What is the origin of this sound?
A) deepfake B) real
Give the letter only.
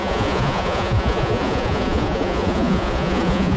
A